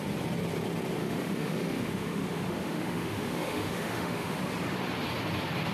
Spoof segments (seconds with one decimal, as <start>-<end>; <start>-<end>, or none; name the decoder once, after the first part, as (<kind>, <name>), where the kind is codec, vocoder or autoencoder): 1.0-4.4 (autoencoder, DAC-VAE)